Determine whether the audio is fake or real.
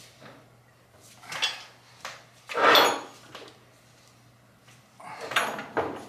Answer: real